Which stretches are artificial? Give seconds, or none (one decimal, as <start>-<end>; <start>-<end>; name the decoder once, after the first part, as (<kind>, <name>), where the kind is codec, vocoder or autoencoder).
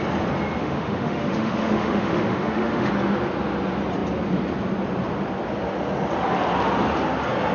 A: 0.6-2.9 (autoencoder, DAC-VAE)